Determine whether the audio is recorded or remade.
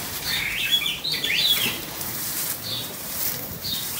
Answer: remade